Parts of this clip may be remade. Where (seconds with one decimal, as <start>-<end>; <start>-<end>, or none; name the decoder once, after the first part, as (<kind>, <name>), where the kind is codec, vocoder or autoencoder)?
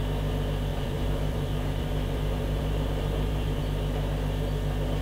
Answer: 0.7-3.6 (vocoder, BigVGAN v2)